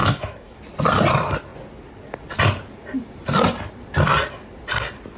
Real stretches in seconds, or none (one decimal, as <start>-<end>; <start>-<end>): 0.6-5.2